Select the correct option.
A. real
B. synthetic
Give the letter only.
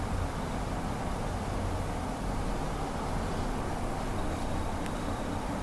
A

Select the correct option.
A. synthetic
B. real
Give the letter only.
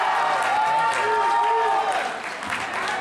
B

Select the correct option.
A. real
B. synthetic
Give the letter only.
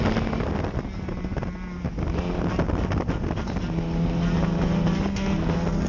A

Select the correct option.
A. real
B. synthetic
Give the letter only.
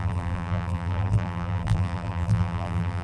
B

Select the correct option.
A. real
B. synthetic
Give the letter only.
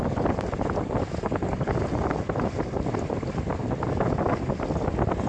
A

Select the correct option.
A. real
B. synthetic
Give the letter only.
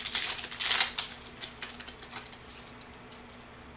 A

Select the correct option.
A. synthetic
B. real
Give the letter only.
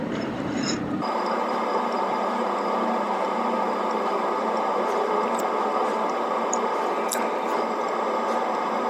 A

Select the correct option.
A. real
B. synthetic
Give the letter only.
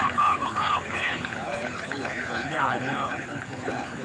B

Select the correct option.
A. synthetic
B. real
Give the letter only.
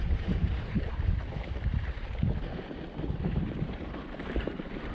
A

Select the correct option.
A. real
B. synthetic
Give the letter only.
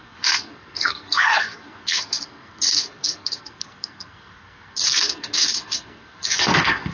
B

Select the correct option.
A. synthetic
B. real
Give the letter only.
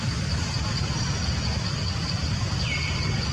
B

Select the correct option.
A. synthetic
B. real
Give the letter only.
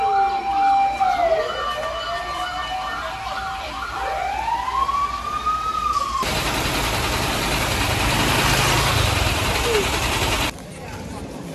B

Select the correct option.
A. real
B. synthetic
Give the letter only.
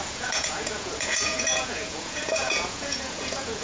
B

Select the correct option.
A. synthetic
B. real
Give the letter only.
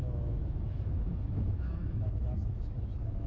A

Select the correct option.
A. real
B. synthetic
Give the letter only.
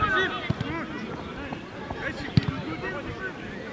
A